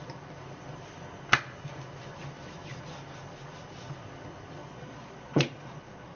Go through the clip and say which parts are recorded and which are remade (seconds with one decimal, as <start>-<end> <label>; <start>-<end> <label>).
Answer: 0.0-4.6 recorded; 4.6-6.2 remade